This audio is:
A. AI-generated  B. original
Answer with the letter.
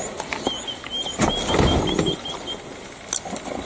B